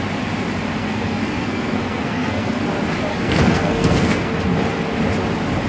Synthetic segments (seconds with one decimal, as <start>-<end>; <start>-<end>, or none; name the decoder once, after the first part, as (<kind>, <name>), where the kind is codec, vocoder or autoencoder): 0.8-2.6 (codec, SNAC); 3.1-4.3